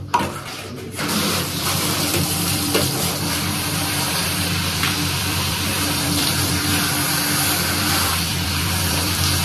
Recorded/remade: remade